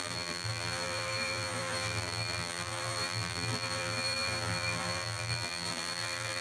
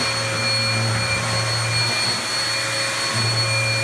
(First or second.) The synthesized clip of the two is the first